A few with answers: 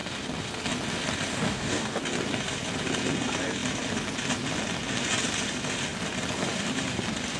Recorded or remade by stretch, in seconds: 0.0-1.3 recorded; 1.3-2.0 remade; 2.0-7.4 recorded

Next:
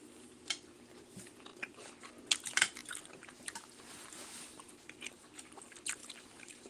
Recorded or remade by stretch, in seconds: 0.0-1.5 recorded; 1.5-2.1 remade; 2.1-2.8 recorded; 2.8-5.6 remade; 5.6-6.0 recorded; 6.0-6.7 remade

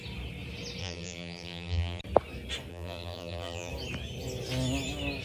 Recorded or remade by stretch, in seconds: 0.0-0.8 recorded; 0.8-2.0 remade; 2.0-2.7 recorded; 2.7-3.7 remade; 3.7-5.2 recorded

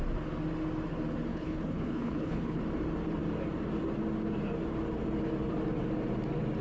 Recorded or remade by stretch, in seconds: 0.0-1.3 recorded; 1.3-2.6 remade; 2.6-6.6 recorded

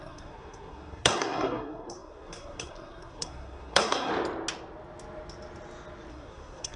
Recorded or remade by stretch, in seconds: 0.0-4.1 remade; 4.1-6.1 recorded; 6.1-6.8 remade